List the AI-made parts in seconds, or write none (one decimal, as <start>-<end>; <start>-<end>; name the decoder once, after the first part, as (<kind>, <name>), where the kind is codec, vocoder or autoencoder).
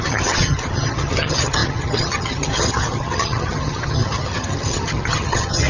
0.0-5.7 (vocoder, HiFi-GAN)